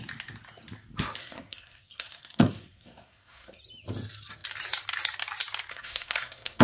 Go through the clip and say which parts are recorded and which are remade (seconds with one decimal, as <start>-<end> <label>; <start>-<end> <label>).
0.0-1.2 recorded; 1.2-3.6 remade; 3.6-5.7 recorded; 5.7-6.6 remade